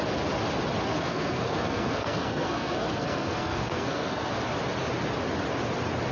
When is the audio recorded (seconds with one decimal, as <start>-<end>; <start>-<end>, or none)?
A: 0.0-0.9; 4.3-6.1